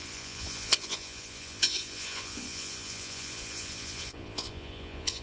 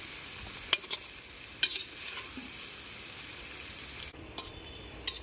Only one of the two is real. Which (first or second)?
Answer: second